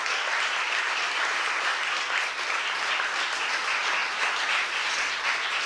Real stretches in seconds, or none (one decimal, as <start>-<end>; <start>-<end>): 0.0-5.7